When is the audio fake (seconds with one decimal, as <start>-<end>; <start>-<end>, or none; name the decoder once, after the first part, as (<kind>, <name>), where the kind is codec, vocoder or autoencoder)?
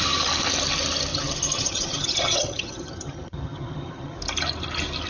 1.1-4.2 (vocoder, HiFi-GAN)